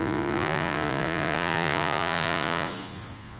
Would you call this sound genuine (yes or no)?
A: no